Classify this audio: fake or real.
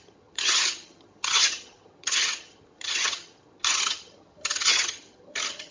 fake